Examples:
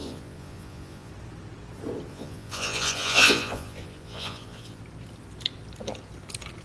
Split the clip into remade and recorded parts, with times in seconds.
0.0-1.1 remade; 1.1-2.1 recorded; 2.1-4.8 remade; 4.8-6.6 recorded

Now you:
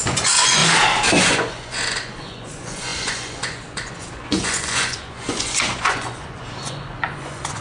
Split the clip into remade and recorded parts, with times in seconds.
0.0-0.6 remade; 0.6-1.2 recorded; 1.2-7.6 remade

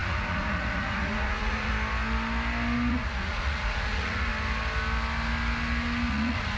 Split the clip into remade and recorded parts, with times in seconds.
0.0-1.7 remade; 1.7-2.9 recorded; 2.9-4.3 remade; 4.3-6.1 recorded; 6.1-6.6 remade

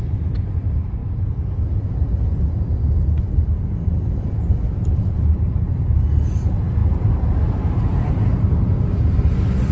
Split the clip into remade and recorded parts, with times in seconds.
0.0-9.7 recorded

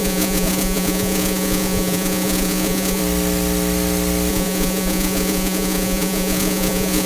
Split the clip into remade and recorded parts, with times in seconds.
0.0-3.0 remade; 3.0-4.3 recorded; 4.3-7.1 remade

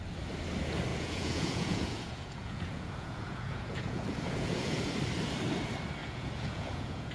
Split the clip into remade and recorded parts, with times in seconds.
0.0-0.9 recorded; 0.9-4.9 remade; 4.9-6.0 recorded; 6.0-7.1 remade

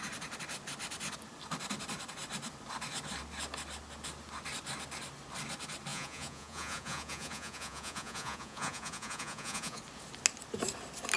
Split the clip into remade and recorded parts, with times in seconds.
0.0-5.9 recorded; 5.9-9.8 remade; 9.8-11.2 recorded